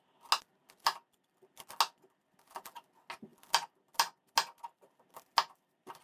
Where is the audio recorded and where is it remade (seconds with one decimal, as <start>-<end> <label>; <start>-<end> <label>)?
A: 0.0-6.0 recorded